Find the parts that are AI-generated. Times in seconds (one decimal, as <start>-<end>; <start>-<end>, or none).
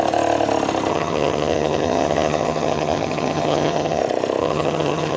0.9-4.0; 4.4-5.2